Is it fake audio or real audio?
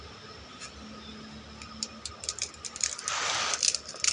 fake